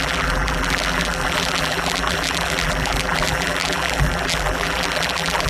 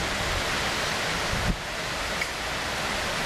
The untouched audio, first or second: second